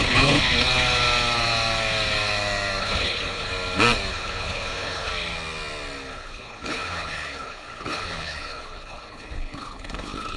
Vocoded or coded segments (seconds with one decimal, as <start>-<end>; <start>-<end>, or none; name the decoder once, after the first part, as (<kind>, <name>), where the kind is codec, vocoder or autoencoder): 0.0-0.4 (codec, HILCodec); 2.8-3.5; 4.1-5.1; 6.1-10.4